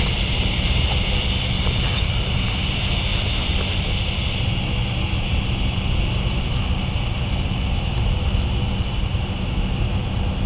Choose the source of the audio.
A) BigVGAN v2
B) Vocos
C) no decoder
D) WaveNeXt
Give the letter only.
C